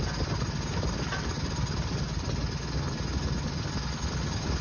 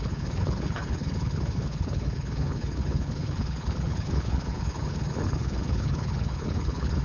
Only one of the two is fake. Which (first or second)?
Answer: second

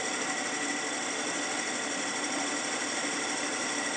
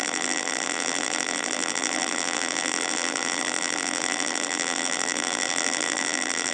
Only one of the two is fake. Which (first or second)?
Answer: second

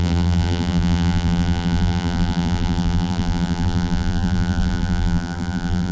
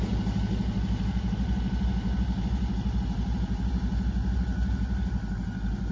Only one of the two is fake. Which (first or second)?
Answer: first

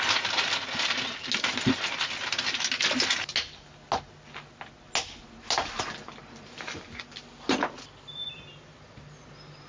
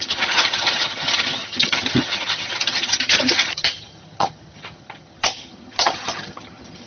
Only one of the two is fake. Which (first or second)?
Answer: second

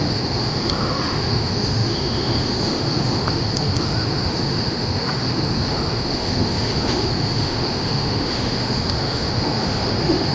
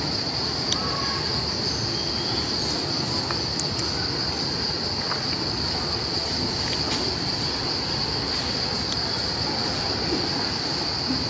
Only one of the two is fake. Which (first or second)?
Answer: first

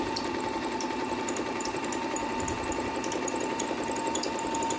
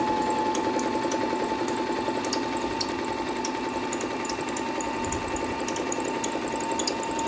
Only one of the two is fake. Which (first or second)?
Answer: first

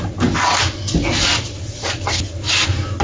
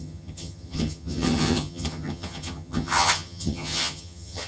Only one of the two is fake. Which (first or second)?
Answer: second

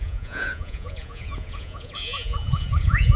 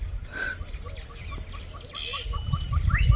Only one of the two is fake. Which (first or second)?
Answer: first